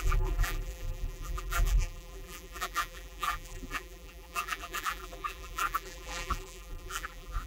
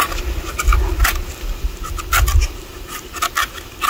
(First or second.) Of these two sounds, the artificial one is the first